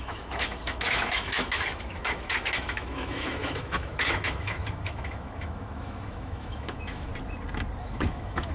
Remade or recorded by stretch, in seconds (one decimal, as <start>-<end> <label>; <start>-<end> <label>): 0.0-7.1 remade; 7.1-7.8 recorded; 7.8-8.5 remade